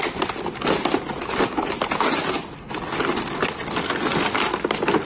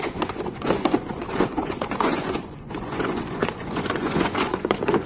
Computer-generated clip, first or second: second